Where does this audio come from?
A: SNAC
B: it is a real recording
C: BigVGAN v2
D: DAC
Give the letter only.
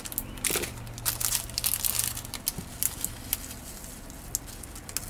B